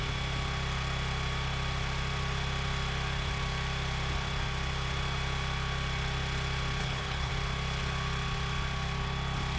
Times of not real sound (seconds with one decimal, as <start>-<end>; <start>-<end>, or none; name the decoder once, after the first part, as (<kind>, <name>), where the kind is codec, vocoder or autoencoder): 6.8-7.3 (codec, HILCodec)